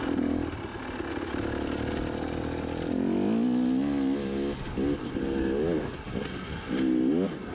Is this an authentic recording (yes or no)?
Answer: yes